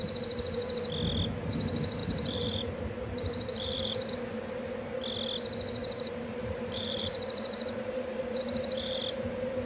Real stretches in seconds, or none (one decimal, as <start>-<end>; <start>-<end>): 0.0-2.0; 4.1-5.8; 9.0-9.7